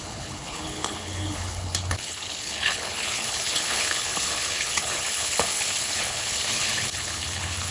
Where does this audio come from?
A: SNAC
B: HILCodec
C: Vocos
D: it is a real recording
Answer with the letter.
B